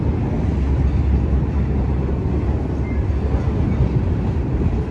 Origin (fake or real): real